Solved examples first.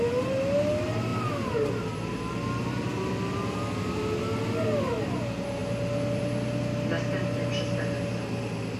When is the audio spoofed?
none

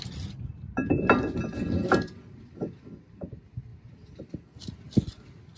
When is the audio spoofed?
none

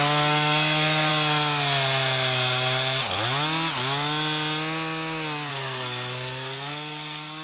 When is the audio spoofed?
0.0-1.1 (codec, SNAC); 5.5-7.4